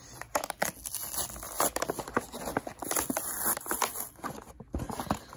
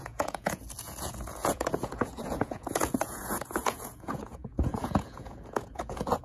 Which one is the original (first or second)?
first